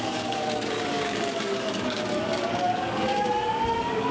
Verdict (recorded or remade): remade